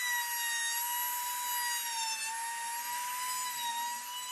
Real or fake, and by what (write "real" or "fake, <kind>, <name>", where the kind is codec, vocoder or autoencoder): real